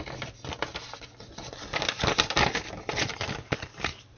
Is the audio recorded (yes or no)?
yes